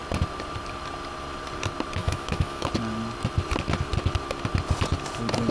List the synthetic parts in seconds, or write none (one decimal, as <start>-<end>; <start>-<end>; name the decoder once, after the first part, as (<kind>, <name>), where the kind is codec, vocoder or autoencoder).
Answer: 2.0-2.7 (autoencoder, DAC-VAE)